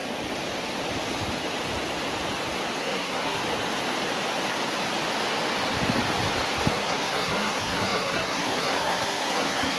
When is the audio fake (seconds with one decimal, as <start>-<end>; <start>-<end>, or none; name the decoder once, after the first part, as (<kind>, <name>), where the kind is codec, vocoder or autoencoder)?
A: 2.8-3.4 (codec, SNAC); 6.7-9.8